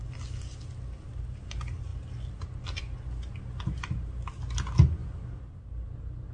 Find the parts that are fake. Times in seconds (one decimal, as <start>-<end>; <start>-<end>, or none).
none